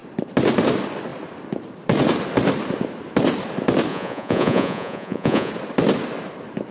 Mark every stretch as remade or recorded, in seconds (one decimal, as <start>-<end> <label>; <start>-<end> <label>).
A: 0.0-3.9 recorded; 3.9-5.5 remade; 5.5-6.7 recorded